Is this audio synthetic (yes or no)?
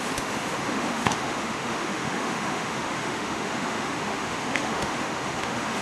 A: yes